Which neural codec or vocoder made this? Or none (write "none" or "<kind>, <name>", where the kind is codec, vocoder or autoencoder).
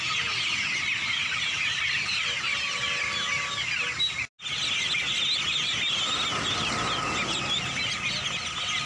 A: none